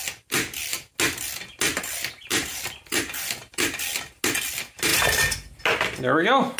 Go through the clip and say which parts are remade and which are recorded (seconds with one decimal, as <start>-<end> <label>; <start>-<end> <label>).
0.0-2.3 recorded; 2.3-2.8 remade; 2.8-6.6 recorded